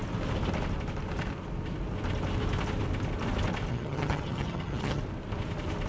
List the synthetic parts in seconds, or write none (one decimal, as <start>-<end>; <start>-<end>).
3.7-5.0